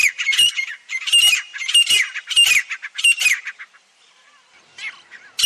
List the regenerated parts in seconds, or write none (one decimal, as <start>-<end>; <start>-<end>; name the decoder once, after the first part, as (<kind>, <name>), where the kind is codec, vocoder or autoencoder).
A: 1.5-4.6 (vocoder, BigVGAN v2)